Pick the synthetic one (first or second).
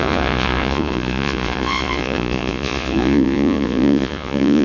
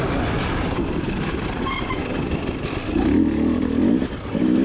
first